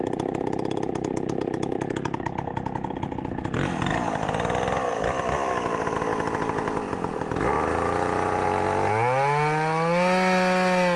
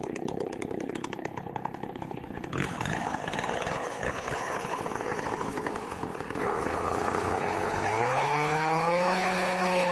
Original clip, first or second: first